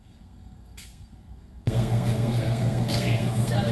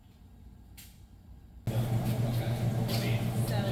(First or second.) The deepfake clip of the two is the first